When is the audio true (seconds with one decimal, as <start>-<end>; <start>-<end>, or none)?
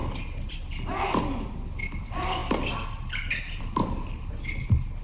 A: 2.4-3.6